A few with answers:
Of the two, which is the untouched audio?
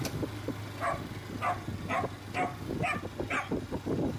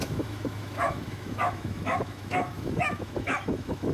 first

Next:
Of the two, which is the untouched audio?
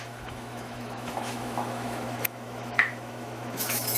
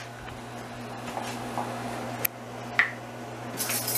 second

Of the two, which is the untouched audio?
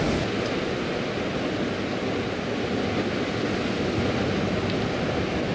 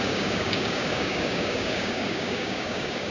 first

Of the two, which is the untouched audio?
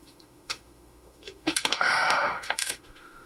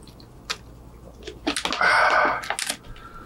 second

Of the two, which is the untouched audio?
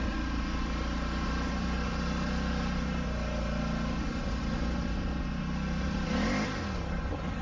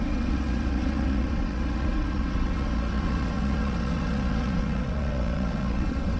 first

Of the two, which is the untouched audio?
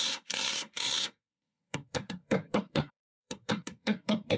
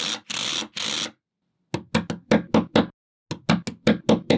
second